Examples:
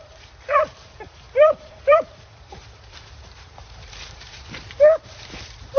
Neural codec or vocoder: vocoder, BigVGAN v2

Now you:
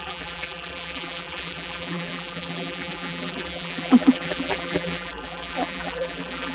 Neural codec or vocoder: vocoder, BigVGAN v2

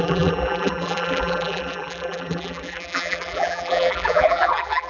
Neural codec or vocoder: vocoder, BigVGAN v2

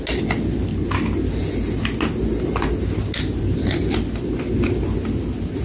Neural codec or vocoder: none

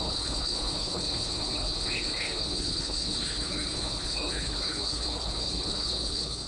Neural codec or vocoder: codec, HILCodec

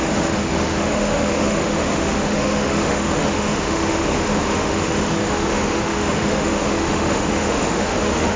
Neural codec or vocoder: autoencoder, DAC-VAE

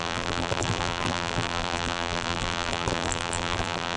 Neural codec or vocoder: vocoder, BigVGAN v2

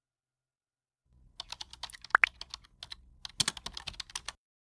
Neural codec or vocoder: none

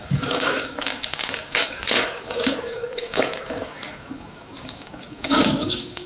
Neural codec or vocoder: codec, DAC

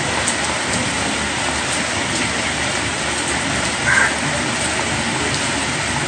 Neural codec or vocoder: none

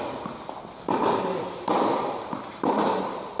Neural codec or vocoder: none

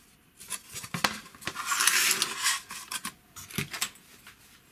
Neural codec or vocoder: none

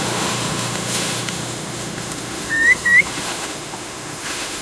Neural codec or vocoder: autoencoder, DAC-VAE